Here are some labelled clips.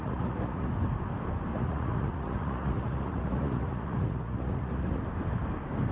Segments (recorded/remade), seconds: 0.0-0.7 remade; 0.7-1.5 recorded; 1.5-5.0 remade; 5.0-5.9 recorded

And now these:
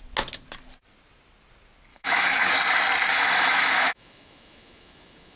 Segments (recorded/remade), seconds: 0.0-1.9 recorded; 1.9-2.5 remade; 2.5-3.1 recorded; 3.1-5.4 remade

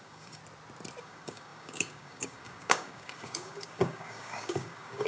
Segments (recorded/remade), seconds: 0.0-0.4 remade; 0.4-1.0 recorded; 1.0-5.1 remade

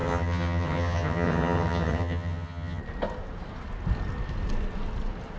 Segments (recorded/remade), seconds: 0.0-2.8 remade; 2.8-5.4 recorded